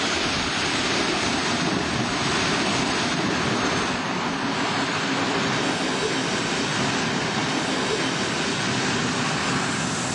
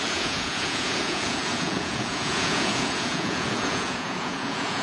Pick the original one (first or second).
first